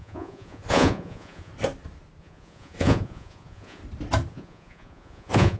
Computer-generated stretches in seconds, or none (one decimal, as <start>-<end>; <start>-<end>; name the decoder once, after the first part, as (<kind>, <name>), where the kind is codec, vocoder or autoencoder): 0.0-1.5 (vocoder, Vocos); 2.2-3.8; 4.3-5.6